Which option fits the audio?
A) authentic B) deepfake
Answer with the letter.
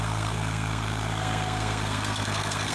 B